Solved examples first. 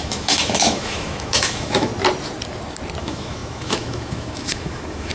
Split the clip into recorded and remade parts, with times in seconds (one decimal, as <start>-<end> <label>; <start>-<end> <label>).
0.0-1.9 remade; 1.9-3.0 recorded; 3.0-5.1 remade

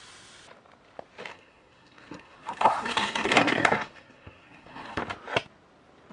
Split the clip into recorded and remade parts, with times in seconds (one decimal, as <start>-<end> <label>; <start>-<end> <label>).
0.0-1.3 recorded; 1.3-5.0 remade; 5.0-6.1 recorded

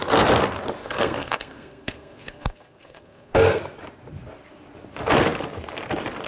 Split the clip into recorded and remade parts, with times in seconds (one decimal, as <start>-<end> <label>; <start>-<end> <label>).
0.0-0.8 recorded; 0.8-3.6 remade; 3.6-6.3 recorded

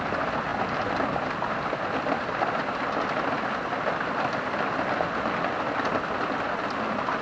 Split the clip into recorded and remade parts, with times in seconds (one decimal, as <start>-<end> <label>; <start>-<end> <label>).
0.0-7.2 recorded